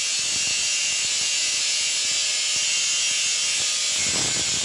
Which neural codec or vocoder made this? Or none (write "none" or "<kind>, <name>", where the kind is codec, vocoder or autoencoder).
none